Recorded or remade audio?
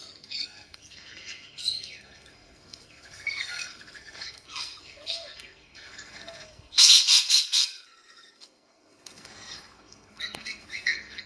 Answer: remade